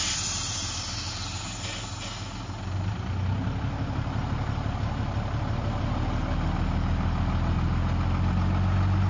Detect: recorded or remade recorded